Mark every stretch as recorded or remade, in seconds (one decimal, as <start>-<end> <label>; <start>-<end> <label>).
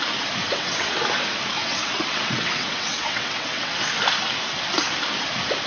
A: 0.0-0.4 recorded; 0.4-1.0 remade; 1.0-1.6 recorded; 1.6-3.7 remade; 3.7-5.7 recorded